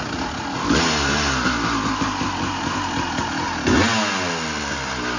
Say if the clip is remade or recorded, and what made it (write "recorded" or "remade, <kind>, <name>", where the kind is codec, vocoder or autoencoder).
recorded